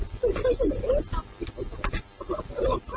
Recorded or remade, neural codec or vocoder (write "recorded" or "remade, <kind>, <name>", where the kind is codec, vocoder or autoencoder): recorded